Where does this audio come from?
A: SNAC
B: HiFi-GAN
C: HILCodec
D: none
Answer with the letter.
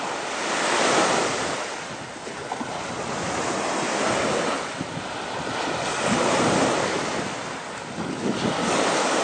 D